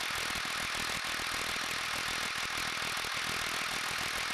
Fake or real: real